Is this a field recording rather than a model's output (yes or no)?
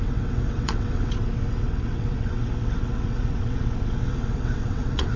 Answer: no